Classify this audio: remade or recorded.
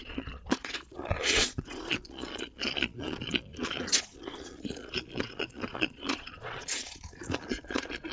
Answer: remade